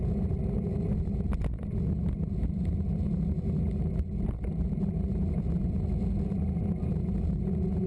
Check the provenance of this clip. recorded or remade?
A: recorded